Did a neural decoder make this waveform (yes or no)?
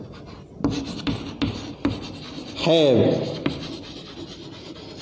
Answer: no